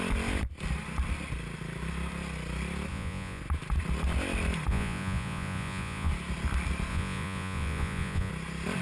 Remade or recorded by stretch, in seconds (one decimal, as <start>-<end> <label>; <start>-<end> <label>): 0.0-2.9 recorded; 2.9-3.4 remade; 3.4-4.7 recorded; 4.7-6.1 remade; 6.1-6.9 recorded; 6.9-8.3 remade; 8.3-8.8 recorded

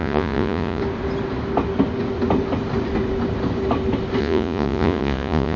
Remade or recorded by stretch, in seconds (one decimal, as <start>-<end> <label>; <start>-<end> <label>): 0.0-0.8 remade; 0.8-4.2 recorded; 4.2-5.6 remade

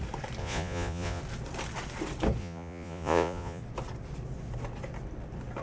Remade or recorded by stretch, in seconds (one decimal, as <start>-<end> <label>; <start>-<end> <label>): 0.0-0.4 recorded; 0.4-1.2 remade; 1.2-2.4 recorded; 2.4-3.6 remade; 3.6-5.6 recorded

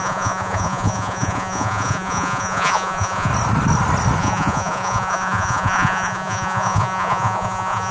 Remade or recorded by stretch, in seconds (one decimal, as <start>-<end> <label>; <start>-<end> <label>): 0.0-3.3 remade; 3.3-4.2 recorded; 4.2-7.9 remade

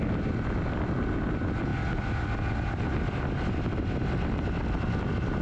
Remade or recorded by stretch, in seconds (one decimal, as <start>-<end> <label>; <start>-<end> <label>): 0.0-5.4 recorded

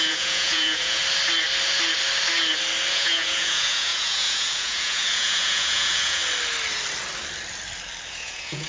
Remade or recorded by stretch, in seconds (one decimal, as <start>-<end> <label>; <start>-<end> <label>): 0.0-1.0 remade; 1.0-2.9 recorded; 2.9-6.2 remade; 6.2-8.1 recorded; 8.1-8.7 remade

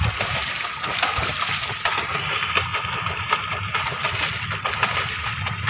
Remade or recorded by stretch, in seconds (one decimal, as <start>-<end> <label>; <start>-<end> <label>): 0.0-5.7 recorded

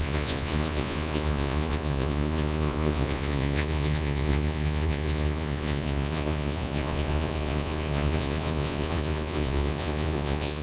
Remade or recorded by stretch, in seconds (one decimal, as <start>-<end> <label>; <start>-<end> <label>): 0.0-10.6 remade